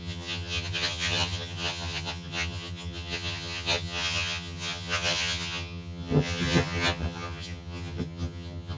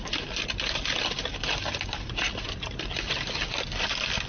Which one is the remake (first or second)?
first